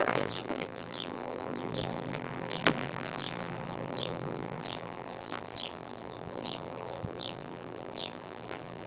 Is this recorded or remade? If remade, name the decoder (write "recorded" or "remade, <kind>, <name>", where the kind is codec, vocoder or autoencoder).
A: remade, vocoder, BigVGAN v2